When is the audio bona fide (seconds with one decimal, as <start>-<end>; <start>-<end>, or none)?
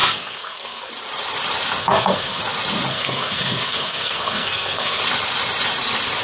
0.9-1.8; 2.4-2.9; 5.0-6.2